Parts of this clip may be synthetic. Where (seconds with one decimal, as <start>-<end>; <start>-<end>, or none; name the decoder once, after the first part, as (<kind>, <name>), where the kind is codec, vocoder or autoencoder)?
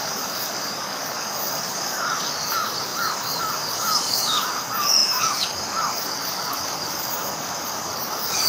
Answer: 0.0-8.5 (codec, DAC)